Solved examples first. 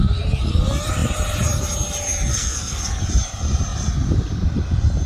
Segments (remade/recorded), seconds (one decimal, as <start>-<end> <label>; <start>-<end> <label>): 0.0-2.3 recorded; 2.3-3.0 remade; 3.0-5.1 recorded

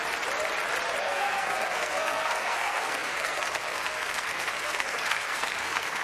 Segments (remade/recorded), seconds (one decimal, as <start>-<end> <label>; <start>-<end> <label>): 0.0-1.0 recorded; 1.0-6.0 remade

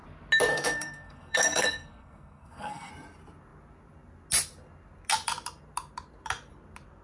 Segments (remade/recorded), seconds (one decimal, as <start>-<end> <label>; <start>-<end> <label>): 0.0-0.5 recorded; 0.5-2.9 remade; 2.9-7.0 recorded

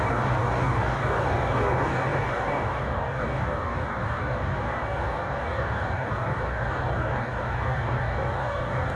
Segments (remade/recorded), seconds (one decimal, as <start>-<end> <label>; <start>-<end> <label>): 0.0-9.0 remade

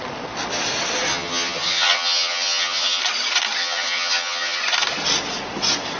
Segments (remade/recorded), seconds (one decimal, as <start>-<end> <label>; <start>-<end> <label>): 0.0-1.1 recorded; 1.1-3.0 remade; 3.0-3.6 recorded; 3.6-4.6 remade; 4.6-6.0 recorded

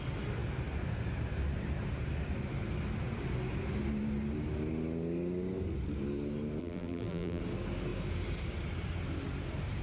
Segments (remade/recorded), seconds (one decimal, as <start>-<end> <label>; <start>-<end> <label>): 0.0-6.6 recorded; 6.6-7.4 remade; 7.4-9.8 recorded

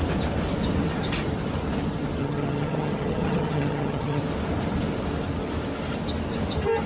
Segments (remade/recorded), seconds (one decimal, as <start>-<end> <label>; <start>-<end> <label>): 0.0-2.2 recorded; 2.2-4.2 remade; 4.2-6.9 recorded